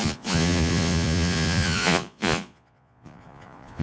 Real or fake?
fake